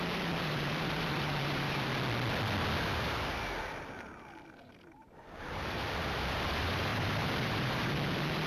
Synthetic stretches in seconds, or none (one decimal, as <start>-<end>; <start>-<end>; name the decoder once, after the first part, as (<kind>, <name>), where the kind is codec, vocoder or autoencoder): 0.0-1.9 (vocoder, BigVGAN v2); 5.4-8.5